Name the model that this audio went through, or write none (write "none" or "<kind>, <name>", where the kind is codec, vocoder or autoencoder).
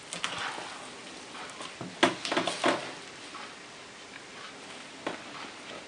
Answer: none